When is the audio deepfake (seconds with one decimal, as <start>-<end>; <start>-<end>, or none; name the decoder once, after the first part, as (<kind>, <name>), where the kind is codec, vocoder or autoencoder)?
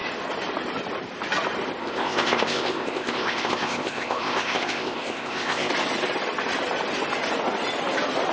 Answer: 1.8-5.7 (codec, ZipCodec)